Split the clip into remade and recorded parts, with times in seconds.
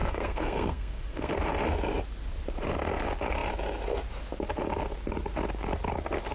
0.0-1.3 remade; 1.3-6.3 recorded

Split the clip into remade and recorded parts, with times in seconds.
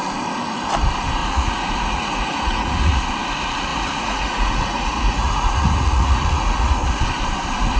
0.0-1.2 recorded; 1.2-3.0 remade; 3.0-3.7 recorded; 3.7-7.0 remade; 7.0-7.8 recorded